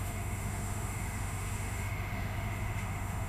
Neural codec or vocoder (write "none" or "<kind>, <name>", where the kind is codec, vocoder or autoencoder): autoencoder, DAC-VAE